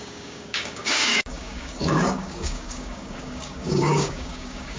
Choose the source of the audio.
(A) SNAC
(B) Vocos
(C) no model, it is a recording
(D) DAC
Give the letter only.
D